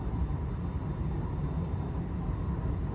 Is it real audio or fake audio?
real